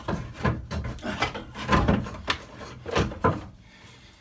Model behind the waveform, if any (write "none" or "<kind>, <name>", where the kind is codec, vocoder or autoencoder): none